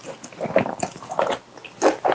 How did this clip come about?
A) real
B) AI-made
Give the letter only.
A